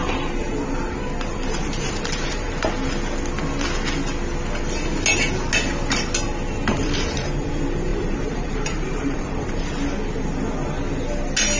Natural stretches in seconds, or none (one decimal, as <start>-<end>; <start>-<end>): 2.5-6.7; 7.5-7.9; 9.6-11.6